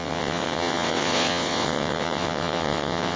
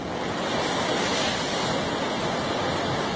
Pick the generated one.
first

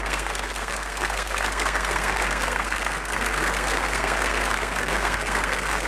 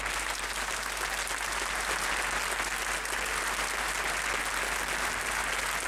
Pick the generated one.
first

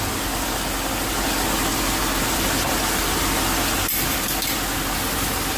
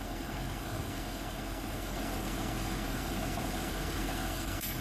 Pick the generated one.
second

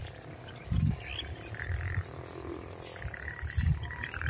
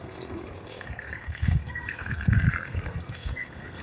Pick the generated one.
second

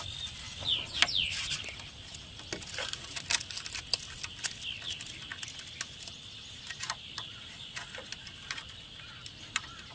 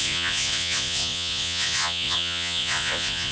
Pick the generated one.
second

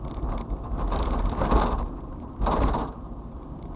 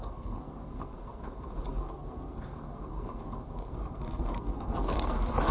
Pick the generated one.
second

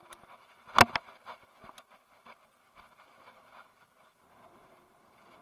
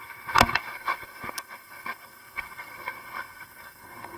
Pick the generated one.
second